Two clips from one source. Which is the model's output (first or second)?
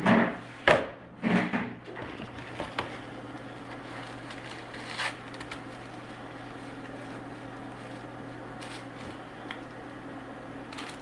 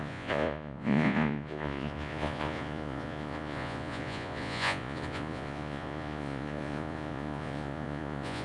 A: second